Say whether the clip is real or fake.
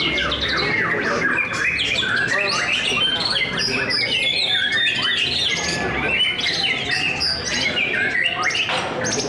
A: real